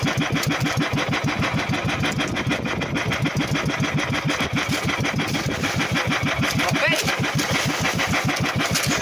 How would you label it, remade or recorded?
recorded